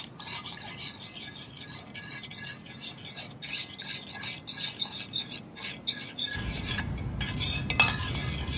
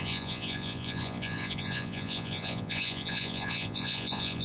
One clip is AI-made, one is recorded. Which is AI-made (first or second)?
second